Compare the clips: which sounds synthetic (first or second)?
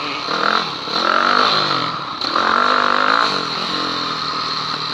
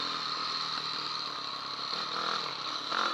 second